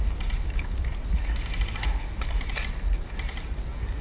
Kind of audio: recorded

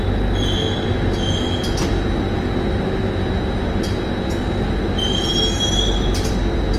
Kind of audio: recorded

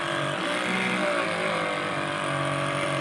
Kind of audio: recorded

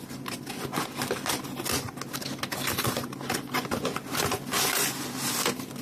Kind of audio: recorded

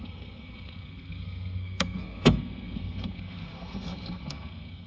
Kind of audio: remade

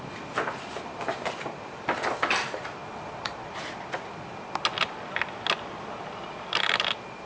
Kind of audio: recorded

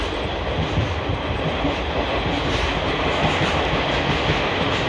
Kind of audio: recorded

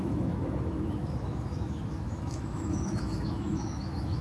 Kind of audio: remade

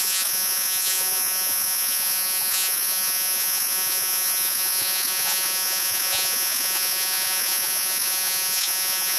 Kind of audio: remade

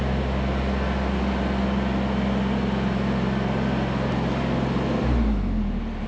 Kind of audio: recorded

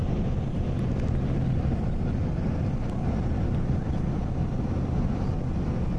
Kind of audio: recorded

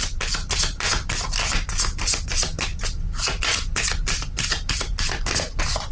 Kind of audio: recorded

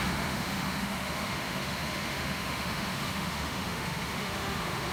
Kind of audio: remade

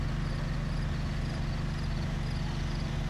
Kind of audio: recorded